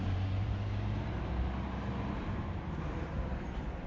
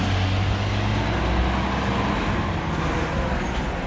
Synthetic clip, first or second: first